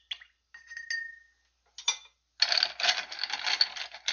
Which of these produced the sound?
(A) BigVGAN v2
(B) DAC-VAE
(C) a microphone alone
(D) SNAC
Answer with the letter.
C